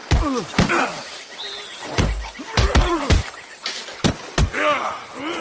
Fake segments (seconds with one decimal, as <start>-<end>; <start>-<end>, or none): none